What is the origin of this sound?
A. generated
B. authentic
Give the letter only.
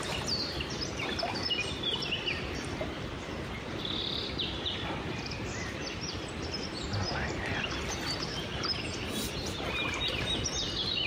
A